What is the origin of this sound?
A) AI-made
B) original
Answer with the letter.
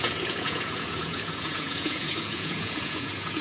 A